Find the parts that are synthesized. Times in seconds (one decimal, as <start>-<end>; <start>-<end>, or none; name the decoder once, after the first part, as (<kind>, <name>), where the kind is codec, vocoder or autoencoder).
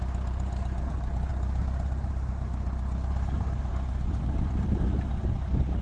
none